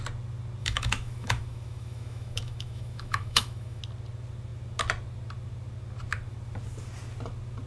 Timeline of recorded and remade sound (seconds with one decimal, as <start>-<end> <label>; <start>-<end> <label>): 0.0-0.6 recorded; 0.6-3.8 remade; 3.8-7.7 recorded